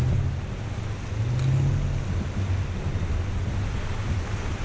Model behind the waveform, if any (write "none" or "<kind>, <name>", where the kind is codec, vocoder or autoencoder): none